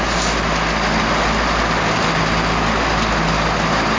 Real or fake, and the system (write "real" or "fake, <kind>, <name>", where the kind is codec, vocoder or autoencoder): real